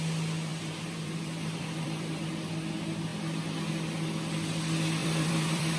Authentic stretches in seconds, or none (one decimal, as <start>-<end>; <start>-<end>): 0.0-0.5; 2.3-5.0